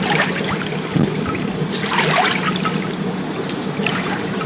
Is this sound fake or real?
real